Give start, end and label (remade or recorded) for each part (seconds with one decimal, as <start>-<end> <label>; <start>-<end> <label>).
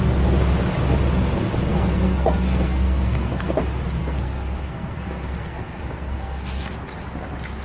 0.0-1.7 recorded; 1.7-3.6 remade; 3.6-4.0 recorded; 4.0-6.7 remade; 6.7-7.6 recorded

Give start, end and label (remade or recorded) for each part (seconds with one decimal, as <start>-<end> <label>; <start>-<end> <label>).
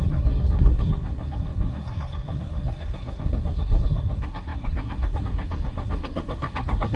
0.0-7.0 remade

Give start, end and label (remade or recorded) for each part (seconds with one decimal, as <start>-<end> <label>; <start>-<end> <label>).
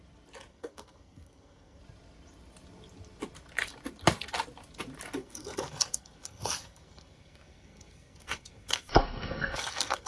0.0-0.5 recorded; 0.5-1.8 remade; 1.8-5.2 recorded; 5.2-10.1 remade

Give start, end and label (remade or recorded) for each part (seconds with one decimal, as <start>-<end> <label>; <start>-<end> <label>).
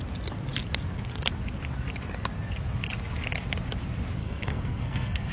0.0-4.2 recorded; 4.2-5.3 remade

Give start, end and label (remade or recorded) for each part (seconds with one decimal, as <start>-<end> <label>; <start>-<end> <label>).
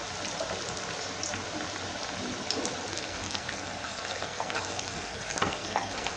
0.0-2.9 recorded; 2.9-6.2 remade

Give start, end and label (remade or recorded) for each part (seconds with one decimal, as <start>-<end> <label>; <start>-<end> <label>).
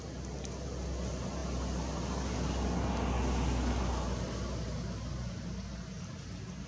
0.0-6.7 recorded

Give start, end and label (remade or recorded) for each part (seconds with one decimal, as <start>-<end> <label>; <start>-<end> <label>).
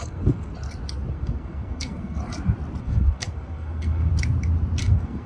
0.0-0.5 remade; 0.5-1.1 recorded; 1.1-2.2 remade; 2.2-2.8 recorded; 2.8-4.1 remade; 4.1-4.8 recorded; 4.8-5.3 remade